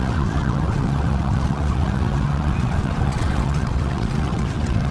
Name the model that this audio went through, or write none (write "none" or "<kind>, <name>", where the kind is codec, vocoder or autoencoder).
vocoder, WaveNeXt